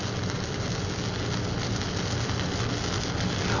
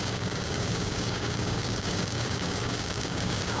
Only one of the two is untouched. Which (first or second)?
first